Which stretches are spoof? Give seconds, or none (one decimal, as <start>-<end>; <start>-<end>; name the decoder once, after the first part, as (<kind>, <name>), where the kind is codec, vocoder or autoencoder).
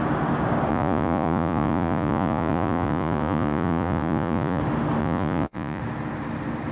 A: 0.7-4.6 (vocoder, Vocos); 5.0-5.8